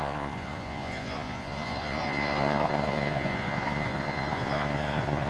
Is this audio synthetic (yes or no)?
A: yes